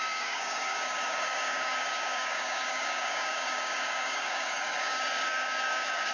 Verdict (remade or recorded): remade